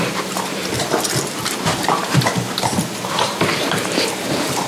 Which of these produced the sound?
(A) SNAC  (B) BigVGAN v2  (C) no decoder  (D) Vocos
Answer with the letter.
B